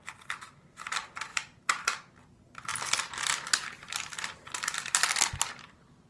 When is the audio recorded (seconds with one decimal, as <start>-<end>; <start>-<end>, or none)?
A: 0.0-6.1